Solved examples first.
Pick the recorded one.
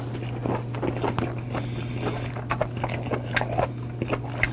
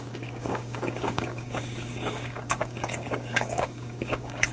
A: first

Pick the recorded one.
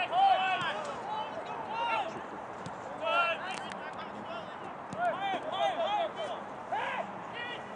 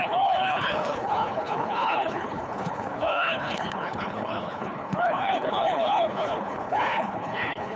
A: first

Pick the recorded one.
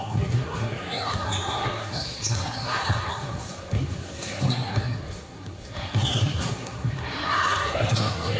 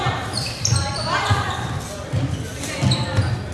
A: second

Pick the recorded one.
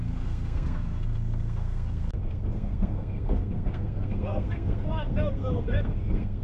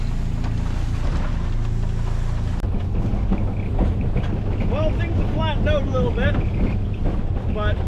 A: second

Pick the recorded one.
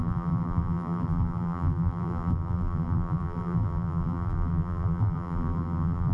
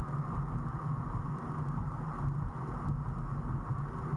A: second